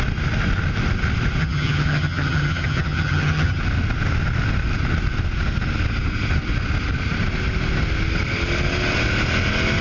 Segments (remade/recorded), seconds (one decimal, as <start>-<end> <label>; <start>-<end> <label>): 0.0-1.4 recorded; 1.4-3.6 remade; 3.6-9.8 recorded